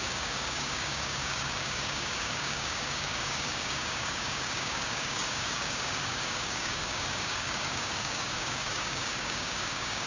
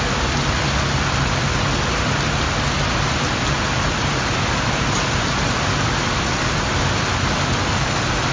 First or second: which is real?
second